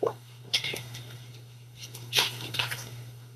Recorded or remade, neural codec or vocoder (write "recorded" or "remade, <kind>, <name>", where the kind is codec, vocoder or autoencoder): remade, codec, SNAC